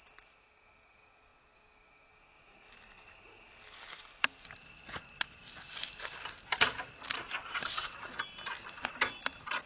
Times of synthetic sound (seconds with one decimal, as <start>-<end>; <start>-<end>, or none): none